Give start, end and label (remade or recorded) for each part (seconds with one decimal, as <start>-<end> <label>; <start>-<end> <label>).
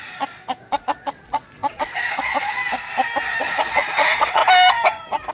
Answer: 0.0-2.6 remade; 2.6-3.4 recorded; 3.4-4.4 remade; 4.4-5.3 recorded